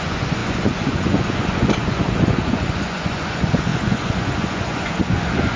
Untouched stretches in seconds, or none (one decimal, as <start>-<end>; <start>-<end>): none